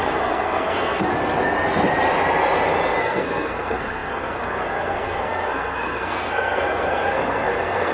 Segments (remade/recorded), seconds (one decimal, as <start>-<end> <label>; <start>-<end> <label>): 0.0-1.1 remade; 1.1-3.0 recorded; 3.0-7.9 remade